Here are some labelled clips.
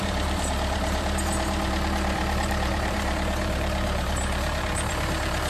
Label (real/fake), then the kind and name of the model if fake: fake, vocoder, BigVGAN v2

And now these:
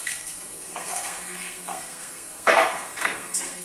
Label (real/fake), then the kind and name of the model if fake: fake, codec, SNAC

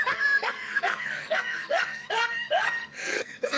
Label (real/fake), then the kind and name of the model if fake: fake, codec, SNAC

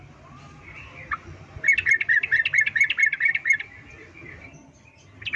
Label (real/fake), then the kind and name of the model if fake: real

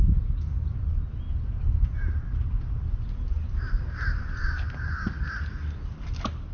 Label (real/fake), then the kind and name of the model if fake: real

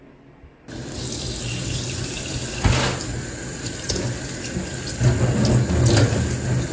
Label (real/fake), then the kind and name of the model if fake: real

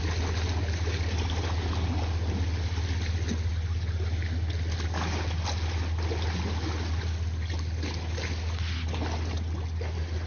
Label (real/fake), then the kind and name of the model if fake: real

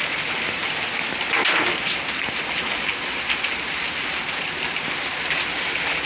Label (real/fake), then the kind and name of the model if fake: real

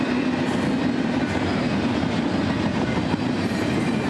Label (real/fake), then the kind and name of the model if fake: real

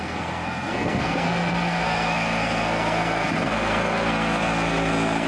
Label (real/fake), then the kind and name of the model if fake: fake, codec, SNAC